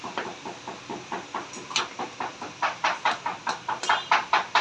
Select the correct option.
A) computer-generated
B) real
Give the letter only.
B